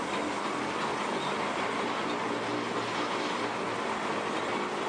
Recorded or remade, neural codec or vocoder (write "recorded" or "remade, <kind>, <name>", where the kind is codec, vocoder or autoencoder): recorded